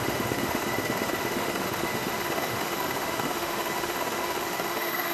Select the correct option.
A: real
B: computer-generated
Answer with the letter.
B